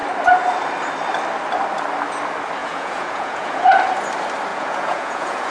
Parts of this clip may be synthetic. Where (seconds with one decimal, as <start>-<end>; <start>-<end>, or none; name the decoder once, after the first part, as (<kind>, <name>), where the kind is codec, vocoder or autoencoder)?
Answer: 2.6-3.6 (vocoder, Vocos); 4.5-5.5